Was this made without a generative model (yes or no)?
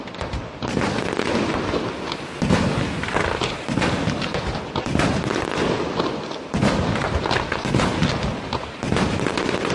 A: yes